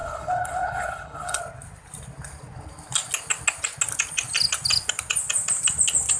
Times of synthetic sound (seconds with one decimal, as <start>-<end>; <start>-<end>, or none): 0.0-1.4